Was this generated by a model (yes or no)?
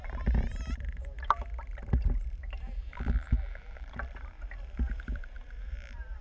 yes